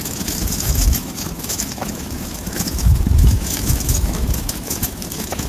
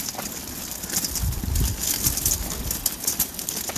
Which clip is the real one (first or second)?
second